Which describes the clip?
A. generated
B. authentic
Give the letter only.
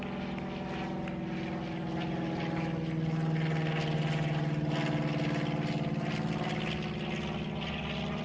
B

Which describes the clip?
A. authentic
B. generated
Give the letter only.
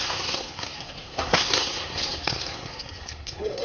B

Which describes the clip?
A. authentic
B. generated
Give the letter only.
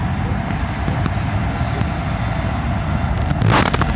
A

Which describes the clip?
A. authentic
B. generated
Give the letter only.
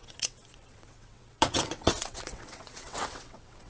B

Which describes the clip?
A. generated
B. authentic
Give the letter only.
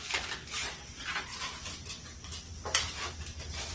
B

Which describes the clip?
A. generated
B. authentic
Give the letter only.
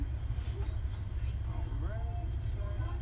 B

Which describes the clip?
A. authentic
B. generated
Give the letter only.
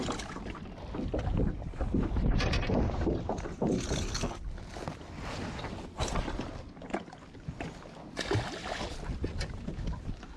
A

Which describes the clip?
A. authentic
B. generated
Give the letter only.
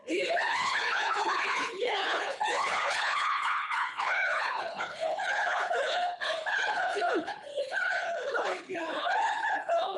B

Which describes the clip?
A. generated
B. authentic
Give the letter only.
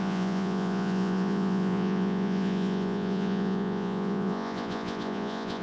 A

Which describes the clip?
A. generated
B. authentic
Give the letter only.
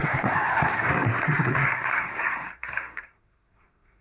A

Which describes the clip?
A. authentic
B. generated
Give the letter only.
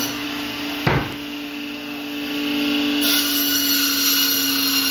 A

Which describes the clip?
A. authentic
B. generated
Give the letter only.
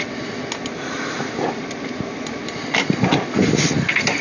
A